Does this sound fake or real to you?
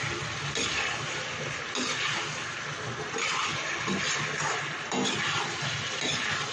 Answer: real